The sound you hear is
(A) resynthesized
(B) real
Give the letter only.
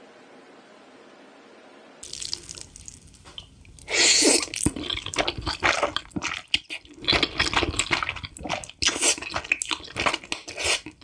B